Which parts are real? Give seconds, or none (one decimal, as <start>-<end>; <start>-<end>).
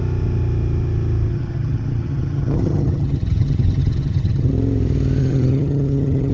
0.0-1.3; 4.5-5.2